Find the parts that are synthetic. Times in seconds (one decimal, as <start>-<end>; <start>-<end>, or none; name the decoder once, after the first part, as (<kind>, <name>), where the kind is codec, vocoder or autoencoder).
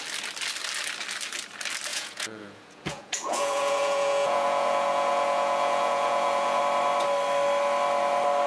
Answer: 1.9-6.6 (vocoder, Vocos)